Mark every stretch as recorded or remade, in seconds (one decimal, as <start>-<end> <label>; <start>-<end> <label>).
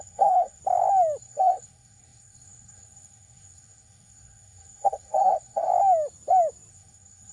0.0-0.6 remade; 0.6-1.2 recorded; 1.2-5.7 remade; 5.7-6.7 recorded; 6.7-7.3 remade